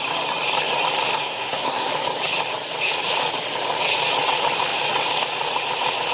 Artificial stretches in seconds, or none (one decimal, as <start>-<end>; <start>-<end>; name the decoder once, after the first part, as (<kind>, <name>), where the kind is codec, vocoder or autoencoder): 1.2-1.9 (codec, SNAC)

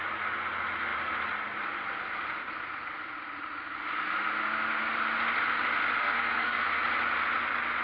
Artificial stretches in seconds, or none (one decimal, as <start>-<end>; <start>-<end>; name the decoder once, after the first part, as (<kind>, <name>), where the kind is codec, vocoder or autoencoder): 6.0-6.8 (codec, SNAC)

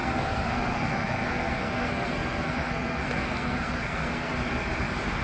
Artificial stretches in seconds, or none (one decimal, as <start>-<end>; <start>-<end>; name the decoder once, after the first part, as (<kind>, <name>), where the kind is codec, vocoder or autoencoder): 0.0-4.3 (codec, SNAC)

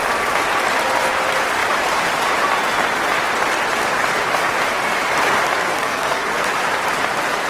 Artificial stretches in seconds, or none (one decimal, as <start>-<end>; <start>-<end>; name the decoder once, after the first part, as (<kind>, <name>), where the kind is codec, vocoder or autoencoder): 5.6-6.5 (codec, SNAC)

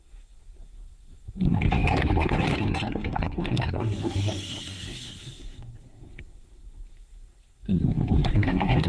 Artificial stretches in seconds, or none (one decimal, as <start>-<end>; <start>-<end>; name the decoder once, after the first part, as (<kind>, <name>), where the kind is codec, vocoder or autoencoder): 0.0-8.9 (codec, SNAC)

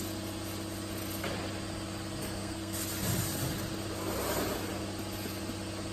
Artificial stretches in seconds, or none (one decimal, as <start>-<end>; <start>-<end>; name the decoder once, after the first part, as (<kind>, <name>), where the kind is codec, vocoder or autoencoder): 2.2-2.8 (codec, SNAC)

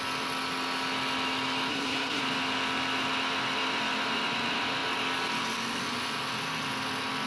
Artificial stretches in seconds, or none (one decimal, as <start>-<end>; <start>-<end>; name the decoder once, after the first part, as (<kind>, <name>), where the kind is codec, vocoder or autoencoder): 1.7-2.2 (codec, SNAC)

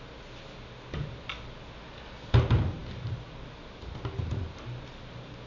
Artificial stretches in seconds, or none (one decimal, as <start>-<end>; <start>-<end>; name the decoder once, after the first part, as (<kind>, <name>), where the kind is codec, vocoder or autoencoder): none